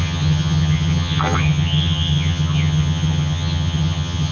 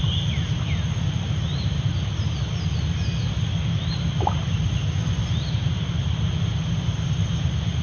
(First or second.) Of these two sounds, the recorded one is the second